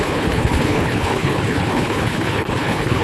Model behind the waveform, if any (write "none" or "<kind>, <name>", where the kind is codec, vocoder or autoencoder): codec, HILCodec